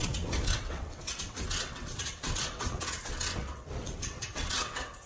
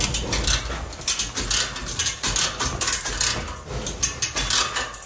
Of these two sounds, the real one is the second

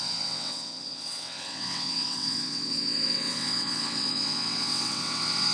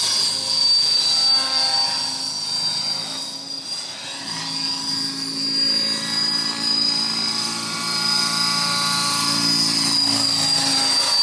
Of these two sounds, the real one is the second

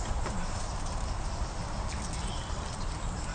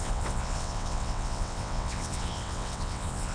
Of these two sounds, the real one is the first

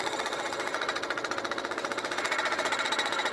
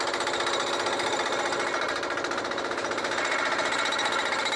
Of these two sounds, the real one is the second